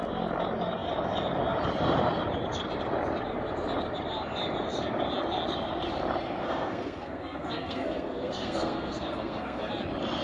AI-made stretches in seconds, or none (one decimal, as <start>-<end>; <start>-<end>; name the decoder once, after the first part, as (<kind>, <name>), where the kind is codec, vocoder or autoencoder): 6.4-9.7 (codec, SNAC)